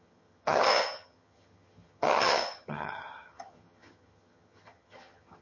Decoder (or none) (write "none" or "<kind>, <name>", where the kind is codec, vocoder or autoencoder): vocoder, HiFi-GAN